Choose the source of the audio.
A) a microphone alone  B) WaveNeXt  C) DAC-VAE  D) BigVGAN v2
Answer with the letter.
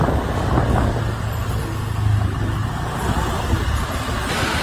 A